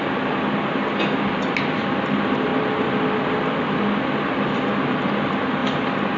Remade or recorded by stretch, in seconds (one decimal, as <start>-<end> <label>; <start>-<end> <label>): 0.0-6.2 recorded